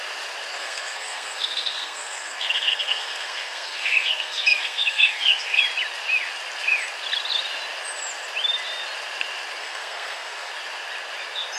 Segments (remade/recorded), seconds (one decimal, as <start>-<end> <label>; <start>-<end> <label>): 0.0-0.6 recorded; 0.6-5.6 remade; 5.6-9.6 recorded; 9.6-10.5 remade; 10.5-11.6 recorded